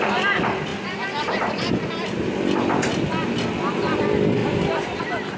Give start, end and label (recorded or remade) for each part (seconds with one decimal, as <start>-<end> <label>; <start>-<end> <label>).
0.0-0.7 recorded; 0.7-1.6 remade; 1.6-4.4 recorded; 4.4-5.0 remade; 5.0-5.4 recorded